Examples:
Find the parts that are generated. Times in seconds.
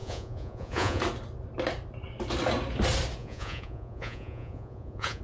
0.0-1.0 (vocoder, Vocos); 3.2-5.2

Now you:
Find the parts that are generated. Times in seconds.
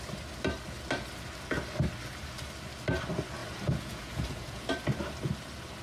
3.4-4.7 (vocoder, Vocos)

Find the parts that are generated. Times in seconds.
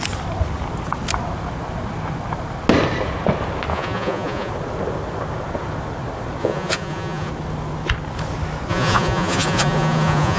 3.7-4.5 (vocoder, Vocos); 6.4-7.3; 8.7-10.4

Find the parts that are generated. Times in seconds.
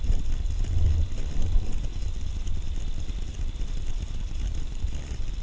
none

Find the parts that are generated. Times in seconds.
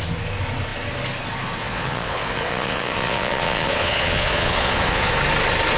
1.6-5.1 (vocoder, Vocos)